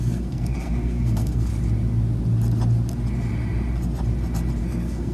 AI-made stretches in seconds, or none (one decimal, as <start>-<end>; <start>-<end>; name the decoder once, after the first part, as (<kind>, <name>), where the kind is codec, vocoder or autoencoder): 0.0-1.5 (codec, SNAC); 4.6-5.1